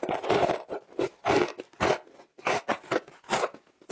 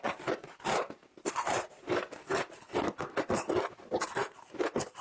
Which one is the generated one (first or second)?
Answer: second